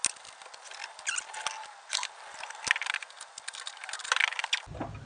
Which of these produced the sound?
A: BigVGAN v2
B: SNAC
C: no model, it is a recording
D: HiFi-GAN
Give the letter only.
C